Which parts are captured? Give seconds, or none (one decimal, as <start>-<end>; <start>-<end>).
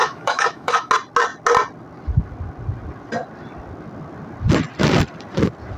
0.9-5.8